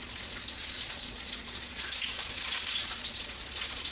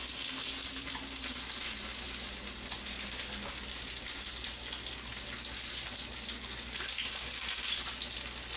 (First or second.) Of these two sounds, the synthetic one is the first